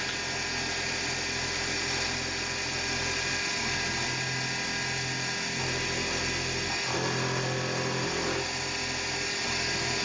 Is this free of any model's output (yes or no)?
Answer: yes